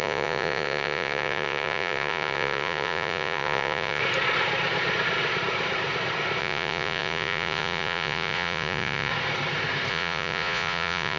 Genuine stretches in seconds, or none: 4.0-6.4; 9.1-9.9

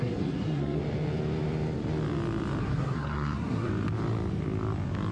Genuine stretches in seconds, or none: 0.8-2.6; 3.7-5.1

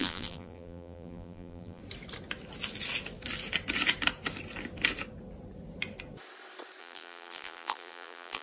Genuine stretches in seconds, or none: 1.8-6.8

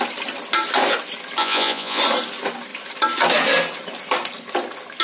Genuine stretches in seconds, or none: 0.0-1.4; 2.0-5.0

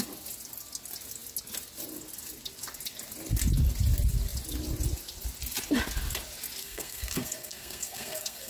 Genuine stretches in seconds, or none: 0.0-6.6